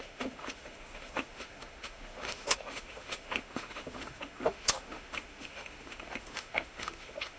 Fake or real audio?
fake